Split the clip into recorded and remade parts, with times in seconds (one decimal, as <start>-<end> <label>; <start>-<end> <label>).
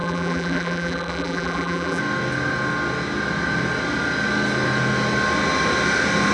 0.0-2.0 remade; 2.0-6.3 recorded